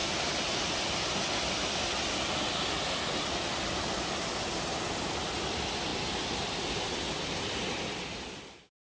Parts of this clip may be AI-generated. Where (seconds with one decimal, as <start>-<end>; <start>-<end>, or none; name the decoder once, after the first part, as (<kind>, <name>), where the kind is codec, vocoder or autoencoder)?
none